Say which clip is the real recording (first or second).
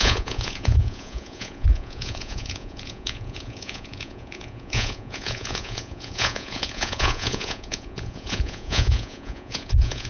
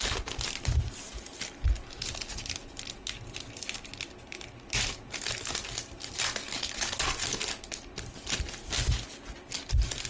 second